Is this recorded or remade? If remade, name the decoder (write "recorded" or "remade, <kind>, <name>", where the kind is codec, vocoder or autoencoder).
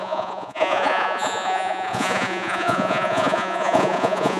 remade, vocoder, Vocos